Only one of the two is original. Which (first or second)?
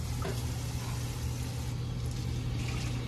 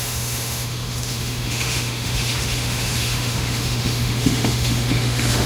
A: first